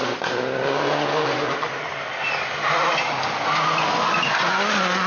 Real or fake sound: real